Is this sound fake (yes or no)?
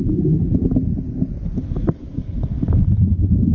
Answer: no